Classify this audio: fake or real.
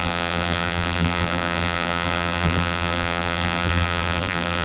fake